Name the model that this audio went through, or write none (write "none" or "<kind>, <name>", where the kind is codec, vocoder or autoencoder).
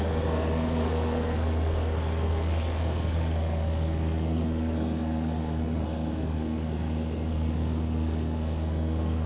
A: codec, SNAC